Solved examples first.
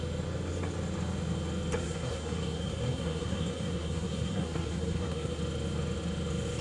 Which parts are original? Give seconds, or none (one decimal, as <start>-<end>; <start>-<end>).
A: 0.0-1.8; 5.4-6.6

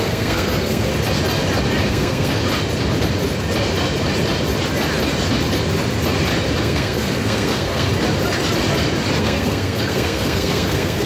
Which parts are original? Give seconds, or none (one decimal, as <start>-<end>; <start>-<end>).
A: 0.9-1.9; 2.4-6.6; 7.9-9.2

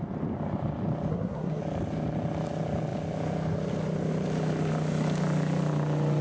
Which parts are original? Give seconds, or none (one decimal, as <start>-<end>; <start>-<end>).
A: 0.0-1.1; 1.6-6.2

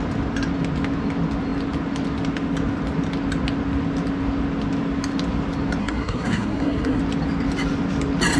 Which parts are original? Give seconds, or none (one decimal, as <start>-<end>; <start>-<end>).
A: 0.0-5.8; 7.0-8.4

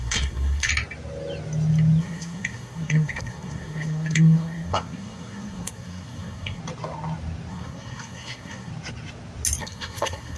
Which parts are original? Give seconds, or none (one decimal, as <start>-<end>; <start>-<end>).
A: 0.7-2.0; 6.6-7.5; 8.7-9.6

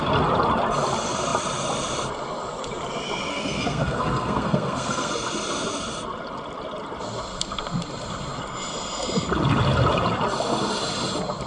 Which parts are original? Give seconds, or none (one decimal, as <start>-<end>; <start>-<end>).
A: 0.0-3.3; 5.1-11.5